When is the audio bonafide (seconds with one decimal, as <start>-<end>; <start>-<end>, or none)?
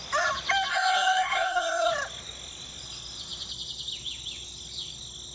0.0-0.7; 1.9-5.3